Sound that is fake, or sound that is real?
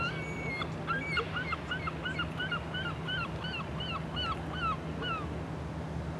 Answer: real